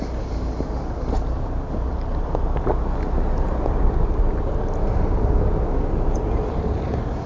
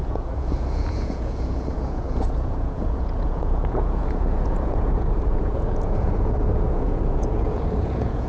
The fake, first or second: second